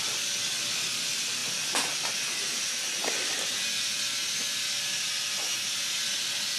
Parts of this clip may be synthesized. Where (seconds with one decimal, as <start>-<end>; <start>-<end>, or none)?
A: none